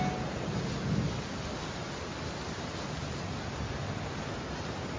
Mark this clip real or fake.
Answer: real